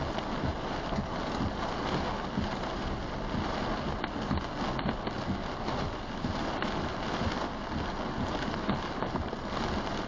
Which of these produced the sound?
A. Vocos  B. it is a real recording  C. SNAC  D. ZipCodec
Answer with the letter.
B